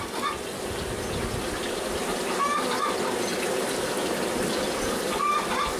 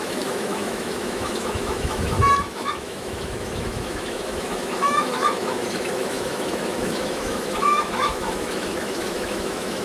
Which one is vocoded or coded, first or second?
second